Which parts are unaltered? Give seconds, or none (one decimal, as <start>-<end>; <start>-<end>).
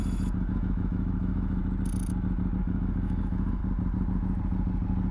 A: 1.6-2.6; 3.6-5.1